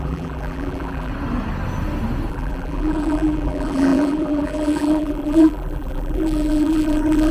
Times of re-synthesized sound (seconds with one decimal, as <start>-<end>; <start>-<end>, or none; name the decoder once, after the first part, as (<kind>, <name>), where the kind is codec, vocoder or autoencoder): 0.0-1.1 (vocoder, BigVGAN v2); 2.3-7.3